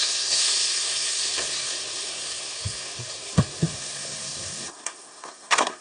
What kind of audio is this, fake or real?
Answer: fake